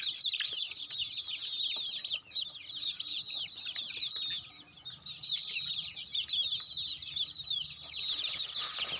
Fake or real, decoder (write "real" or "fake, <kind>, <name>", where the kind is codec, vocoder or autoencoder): real